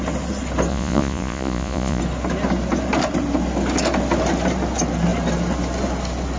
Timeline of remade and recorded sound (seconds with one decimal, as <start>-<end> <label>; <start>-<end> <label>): 0.0-0.7 recorded; 0.7-2.0 remade; 2.0-6.4 recorded